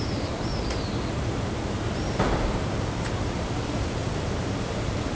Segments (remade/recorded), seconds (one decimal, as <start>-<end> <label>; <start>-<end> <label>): 0.0-0.5 remade; 0.5-2.1 recorded; 2.1-5.1 remade